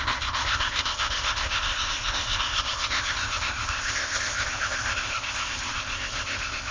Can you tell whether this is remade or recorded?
remade